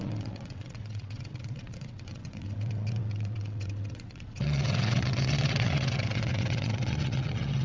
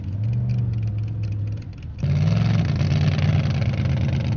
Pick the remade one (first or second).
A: first